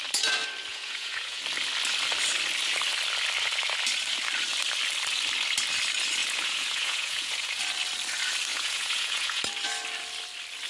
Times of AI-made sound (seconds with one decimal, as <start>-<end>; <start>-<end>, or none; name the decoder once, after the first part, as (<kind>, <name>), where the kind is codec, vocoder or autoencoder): 0.7-1.4 (vocoder, Vocos); 6.2-7.6; 8.5-9.4